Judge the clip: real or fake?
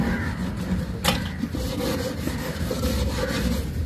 real